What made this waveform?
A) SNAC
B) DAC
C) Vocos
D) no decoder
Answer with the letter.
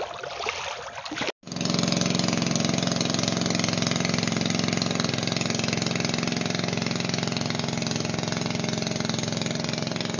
D